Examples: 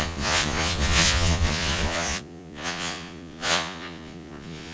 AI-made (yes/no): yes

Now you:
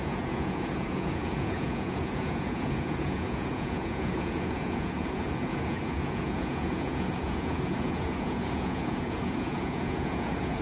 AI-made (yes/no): yes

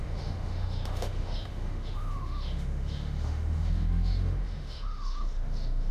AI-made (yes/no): yes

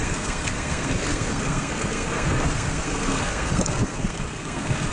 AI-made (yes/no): yes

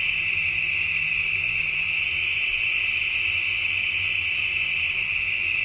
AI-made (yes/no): no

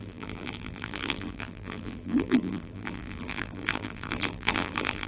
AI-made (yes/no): yes